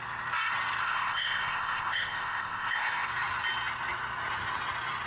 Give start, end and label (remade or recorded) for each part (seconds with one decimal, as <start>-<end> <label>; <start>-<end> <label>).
0.0-0.8 recorded; 0.8-3.1 remade; 3.1-5.1 recorded